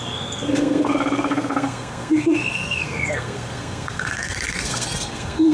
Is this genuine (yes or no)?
no